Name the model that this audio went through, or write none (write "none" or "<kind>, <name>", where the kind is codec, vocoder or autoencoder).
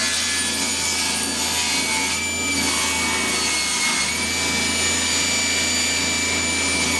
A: none